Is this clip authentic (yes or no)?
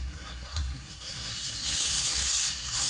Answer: no